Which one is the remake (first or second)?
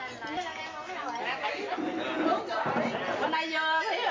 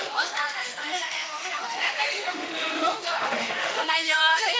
second